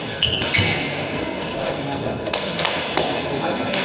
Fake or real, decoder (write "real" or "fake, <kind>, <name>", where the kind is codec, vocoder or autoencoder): fake, codec, SNAC